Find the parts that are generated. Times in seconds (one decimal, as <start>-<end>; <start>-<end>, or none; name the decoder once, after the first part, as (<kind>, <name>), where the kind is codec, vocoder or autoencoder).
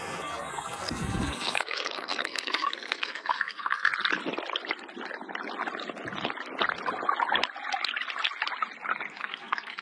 0.0-3.9 (codec, SNAC); 9.1-9.8